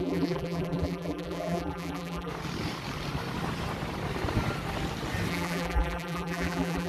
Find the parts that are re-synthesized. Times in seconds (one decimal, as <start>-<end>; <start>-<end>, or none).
0.0-2.3; 5.3-6.9